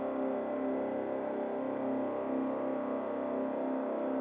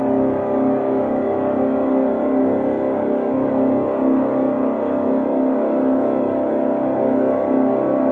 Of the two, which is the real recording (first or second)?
first